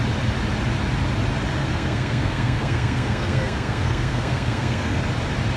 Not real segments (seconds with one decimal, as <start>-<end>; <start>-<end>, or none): 1.6-5.0